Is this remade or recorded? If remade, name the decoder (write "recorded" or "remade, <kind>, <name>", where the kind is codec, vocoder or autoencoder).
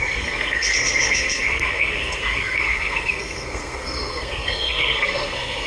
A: remade, codec, SNAC